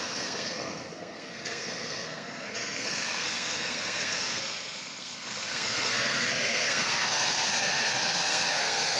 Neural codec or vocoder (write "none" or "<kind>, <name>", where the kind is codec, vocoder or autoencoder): codec, SNAC